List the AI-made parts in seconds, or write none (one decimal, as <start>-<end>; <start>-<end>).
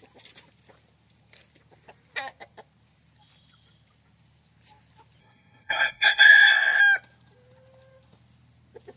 5.2-6.8